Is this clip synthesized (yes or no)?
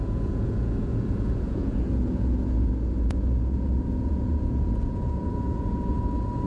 yes